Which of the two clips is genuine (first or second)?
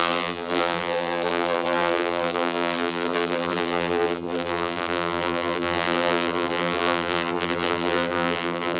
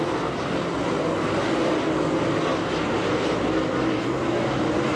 second